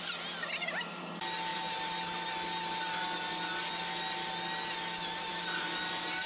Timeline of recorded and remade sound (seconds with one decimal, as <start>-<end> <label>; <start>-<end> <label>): 0.0-6.3 recorded